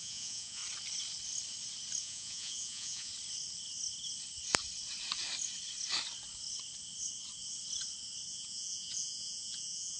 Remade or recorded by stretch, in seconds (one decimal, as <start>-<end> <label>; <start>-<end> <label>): 0.0-0.6 remade; 0.6-2.0 recorded; 2.0-3.1 remade; 3.1-8.3 recorded; 8.3-10.0 remade